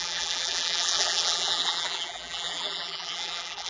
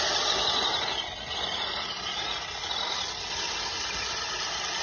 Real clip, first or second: second